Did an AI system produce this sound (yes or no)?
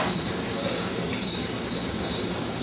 no